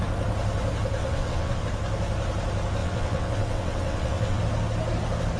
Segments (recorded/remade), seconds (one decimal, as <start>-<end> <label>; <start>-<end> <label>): 0.0-1.0 recorded; 1.0-1.6 remade; 1.6-2.8 recorded; 2.8-4.4 remade; 4.4-5.4 recorded